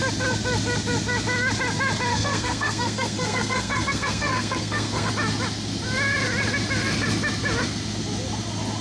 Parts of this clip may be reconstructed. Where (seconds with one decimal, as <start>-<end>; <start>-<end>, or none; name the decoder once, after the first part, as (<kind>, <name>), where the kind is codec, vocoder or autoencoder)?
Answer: 2.1-5.1 (codec, SNAC)